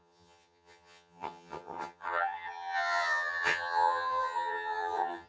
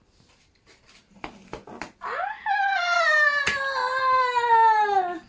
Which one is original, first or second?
second